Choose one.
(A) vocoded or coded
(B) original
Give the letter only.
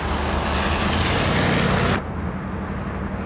B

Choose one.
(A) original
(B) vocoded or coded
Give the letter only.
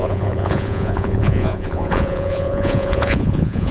B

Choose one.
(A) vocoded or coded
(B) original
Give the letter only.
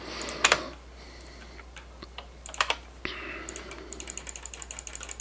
B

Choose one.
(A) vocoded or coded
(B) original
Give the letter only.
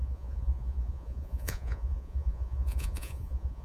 A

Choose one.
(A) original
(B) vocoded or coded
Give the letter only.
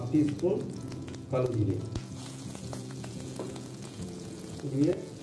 B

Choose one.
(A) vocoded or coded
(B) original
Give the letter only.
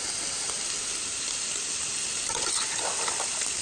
B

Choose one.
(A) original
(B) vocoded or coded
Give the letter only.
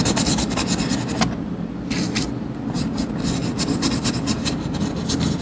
A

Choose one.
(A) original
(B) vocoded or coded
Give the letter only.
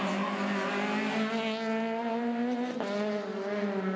A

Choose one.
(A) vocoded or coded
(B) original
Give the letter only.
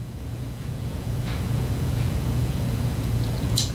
A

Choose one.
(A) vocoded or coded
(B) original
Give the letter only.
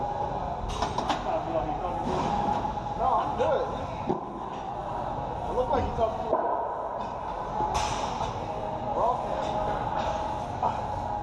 B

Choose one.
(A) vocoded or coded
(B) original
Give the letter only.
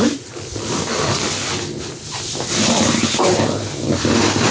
B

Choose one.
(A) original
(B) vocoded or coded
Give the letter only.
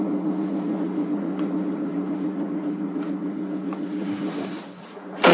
B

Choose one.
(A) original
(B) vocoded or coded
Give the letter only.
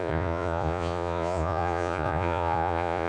B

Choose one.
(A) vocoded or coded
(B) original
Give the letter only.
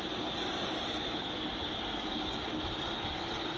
B